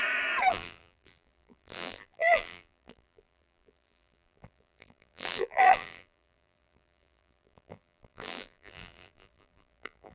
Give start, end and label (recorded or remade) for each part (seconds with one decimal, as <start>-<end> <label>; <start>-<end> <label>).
0.0-0.5 recorded; 0.5-10.1 remade